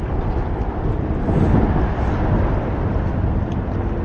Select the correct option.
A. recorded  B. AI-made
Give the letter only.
A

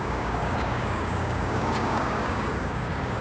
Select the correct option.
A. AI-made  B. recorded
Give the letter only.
A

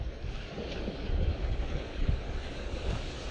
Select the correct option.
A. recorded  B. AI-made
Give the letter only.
B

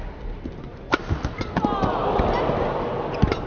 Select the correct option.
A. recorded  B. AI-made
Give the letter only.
A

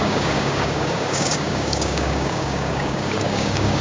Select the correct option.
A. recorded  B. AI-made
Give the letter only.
B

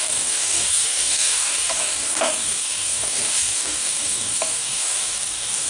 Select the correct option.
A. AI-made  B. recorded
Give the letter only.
A